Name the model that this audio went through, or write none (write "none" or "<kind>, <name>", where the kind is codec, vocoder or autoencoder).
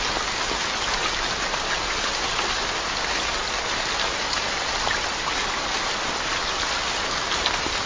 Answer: none